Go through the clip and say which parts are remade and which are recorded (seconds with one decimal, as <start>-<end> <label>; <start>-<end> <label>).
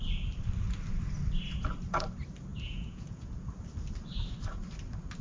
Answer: 0.0-2.5 recorded; 2.5-3.5 remade; 3.5-5.2 recorded